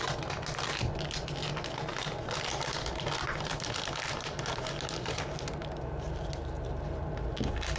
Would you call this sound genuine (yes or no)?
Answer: yes